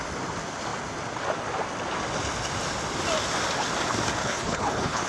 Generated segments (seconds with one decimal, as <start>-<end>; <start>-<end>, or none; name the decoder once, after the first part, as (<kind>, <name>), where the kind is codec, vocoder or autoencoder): 4.2-5.1 (codec, HILCodec)

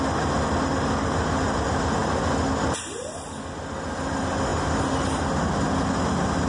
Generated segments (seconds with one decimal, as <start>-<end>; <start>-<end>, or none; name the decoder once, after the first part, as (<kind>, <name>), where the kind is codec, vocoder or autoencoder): none

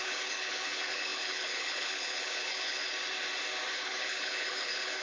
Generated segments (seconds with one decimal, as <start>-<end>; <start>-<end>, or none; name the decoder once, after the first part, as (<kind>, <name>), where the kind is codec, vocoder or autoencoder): 0.0-2.8 (codec, HILCodec); 3.7-5.0